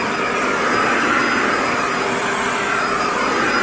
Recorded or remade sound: recorded